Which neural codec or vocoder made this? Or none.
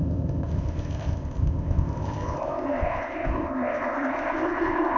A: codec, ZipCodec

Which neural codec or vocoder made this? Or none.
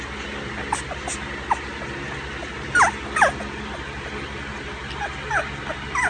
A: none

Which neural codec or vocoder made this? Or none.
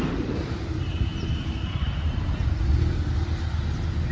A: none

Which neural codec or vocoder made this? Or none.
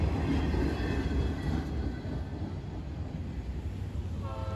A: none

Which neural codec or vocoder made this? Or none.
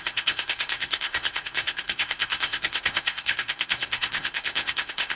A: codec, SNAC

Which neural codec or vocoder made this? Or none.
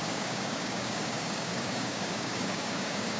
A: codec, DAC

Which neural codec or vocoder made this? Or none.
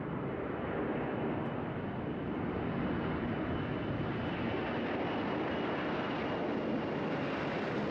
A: none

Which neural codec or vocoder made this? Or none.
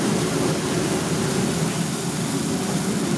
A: none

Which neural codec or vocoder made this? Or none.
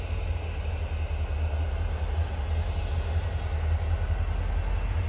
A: none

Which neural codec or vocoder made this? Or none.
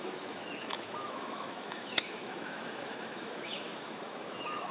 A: autoencoder, DAC-VAE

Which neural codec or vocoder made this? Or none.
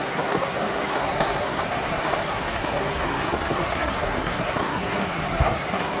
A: codec, SNAC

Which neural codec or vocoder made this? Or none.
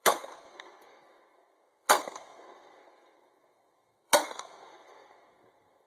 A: codec, SNAC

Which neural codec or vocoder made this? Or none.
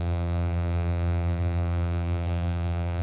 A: vocoder, BigVGAN v2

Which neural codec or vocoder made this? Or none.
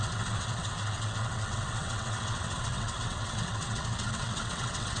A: vocoder, WaveNeXt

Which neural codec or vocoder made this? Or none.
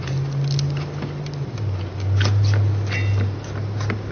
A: none